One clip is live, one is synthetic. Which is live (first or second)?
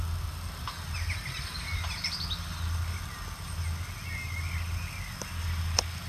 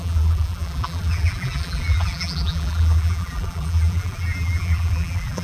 first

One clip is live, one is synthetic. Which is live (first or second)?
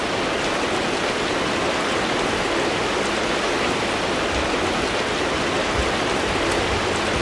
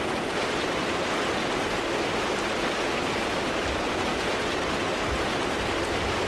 first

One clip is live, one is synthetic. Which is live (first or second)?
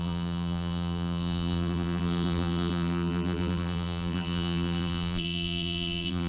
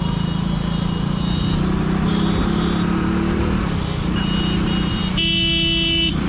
second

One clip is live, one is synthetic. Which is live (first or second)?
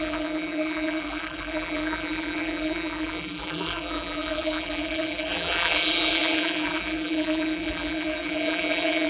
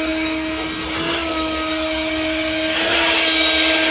second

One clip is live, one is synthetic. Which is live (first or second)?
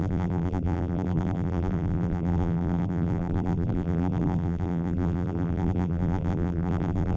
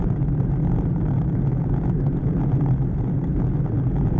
second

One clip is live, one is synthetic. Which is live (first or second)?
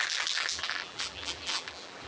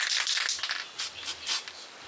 second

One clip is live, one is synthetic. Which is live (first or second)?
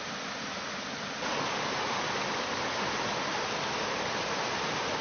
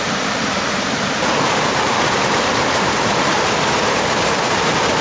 first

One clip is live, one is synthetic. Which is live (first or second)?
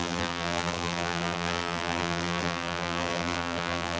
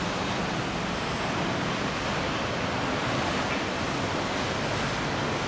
second